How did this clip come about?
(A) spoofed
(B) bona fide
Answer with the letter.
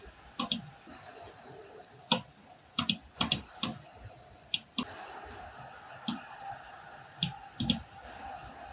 B